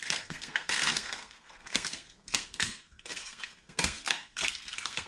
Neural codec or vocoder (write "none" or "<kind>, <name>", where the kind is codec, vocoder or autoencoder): codec, SNAC